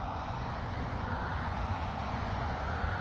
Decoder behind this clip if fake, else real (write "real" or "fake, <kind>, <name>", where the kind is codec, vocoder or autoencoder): fake, vocoder, Vocos